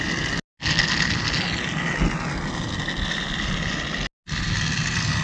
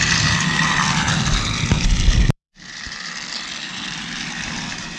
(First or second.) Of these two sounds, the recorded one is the first